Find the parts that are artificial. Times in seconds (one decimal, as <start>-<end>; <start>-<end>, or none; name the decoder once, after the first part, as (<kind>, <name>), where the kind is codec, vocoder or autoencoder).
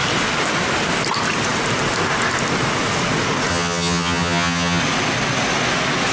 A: 3.5-4.8 (vocoder, HiFi-GAN)